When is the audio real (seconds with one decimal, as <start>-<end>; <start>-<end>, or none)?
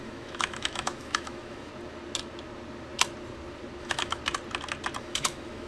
1.7-3.8; 4.2-5.0